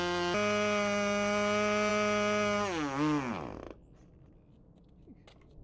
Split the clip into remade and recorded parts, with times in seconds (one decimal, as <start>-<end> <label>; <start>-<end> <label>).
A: 0.0-5.6 recorded